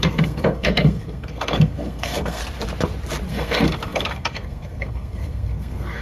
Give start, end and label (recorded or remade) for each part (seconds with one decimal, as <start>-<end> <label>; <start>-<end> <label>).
0.0-2.4 remade; 2.4-3.3 recorded; 3.3-6.0 remade